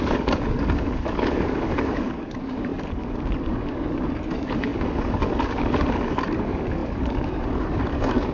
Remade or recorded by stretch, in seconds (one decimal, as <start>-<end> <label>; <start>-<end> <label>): 0.0-8.3 remade

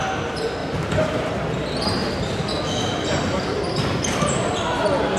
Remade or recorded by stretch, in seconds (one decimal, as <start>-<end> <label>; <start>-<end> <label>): 0.0-0.6 recorded; 0.6-1.3 remade; 1.3-2.0 recorded; 2.0-5.2 remade

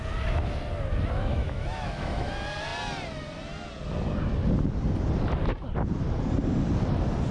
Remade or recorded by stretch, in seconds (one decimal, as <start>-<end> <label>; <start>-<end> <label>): 0.0-1.3 recorded; 1.3-2.3 remade; 2.3-7.3 recorded

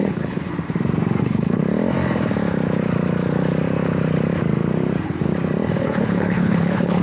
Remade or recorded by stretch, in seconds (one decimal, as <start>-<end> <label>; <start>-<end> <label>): 0.0-0.5 remade; 0.5-1.2 recorded; 1.2-1.6 remade; 1.6-5.8 recorded; 5.8-7.0 remade

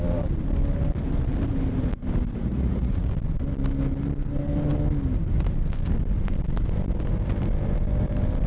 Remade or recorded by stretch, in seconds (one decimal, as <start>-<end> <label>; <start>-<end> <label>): 0.0-2.4 recorded; 2.4-3.1 remade; 3.1-8.5 recorded

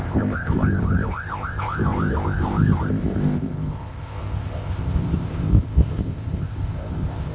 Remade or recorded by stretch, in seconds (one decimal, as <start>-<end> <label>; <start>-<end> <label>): 0.0-7.3 remade

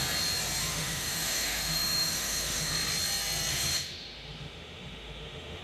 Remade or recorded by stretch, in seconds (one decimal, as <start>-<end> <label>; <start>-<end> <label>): 0.0-0.7 recorded; 0.7-2.7 remade; 2.7-3.5 recorded; 3.5-5.6 remade